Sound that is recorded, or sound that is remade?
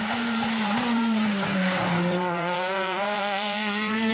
remade